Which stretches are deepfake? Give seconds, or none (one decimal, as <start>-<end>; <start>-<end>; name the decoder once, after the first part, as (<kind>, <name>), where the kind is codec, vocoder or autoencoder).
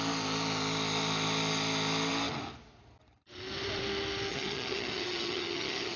4.3-6.0 (vocoder, HiFi-GAN)